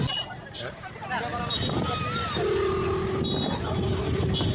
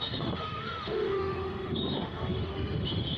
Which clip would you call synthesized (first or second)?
second